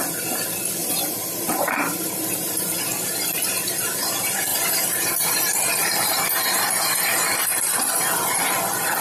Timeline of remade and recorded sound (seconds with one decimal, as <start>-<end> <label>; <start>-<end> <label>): 0.0-0.8 recorded; 0.8-2.7 remade; 2.7-4.5 recorded; 4.5-7.2 remade; 7.2-9.0 recorded